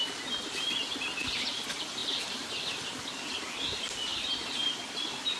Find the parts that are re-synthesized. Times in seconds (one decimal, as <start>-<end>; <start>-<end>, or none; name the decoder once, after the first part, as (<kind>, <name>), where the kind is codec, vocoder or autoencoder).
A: none